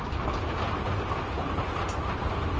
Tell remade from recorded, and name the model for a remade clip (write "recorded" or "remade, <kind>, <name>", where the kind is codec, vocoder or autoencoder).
recorded